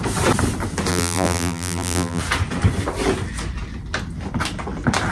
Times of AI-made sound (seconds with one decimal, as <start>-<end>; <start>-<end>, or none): 0.9-2.2